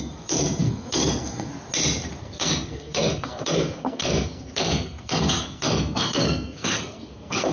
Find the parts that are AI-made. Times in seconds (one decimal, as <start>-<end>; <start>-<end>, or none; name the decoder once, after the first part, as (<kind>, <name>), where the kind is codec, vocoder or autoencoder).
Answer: 0.0-1.5 (codec, SNAC); 2.2-7.5